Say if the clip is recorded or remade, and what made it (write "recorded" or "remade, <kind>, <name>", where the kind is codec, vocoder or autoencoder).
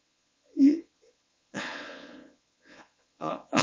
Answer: remade, vocoder, Vocos